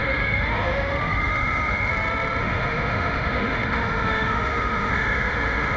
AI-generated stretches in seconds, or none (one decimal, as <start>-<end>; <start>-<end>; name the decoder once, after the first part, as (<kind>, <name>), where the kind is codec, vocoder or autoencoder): 0.0-1.9 (autoencoder, DAC-VAE); 2.4-5.8